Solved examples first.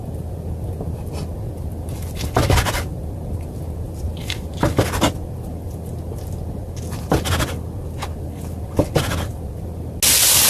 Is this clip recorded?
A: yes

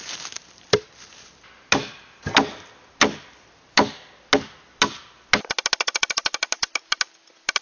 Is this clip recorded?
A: yes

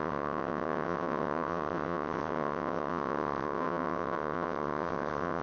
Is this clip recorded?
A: no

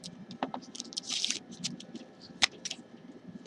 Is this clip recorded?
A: yes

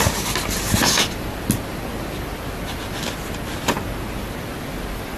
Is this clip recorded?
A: yes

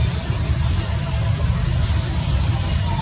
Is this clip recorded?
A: yes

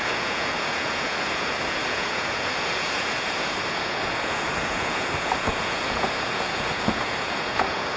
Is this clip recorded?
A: no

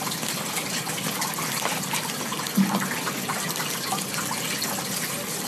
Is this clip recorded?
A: yes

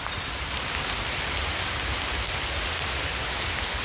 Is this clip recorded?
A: yes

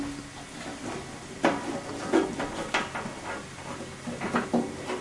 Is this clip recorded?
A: yes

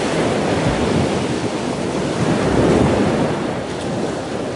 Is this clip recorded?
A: yes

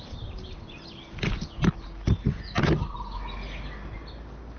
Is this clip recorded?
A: yes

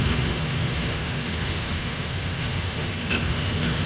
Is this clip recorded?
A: no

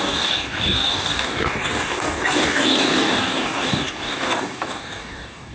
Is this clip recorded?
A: no